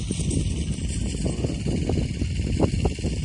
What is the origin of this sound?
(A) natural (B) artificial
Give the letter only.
A